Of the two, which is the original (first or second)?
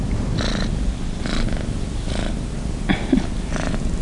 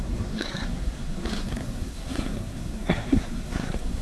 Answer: first